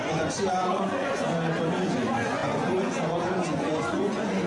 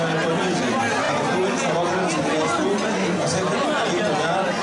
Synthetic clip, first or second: first